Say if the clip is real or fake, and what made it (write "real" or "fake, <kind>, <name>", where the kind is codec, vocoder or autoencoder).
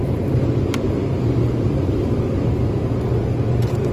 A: real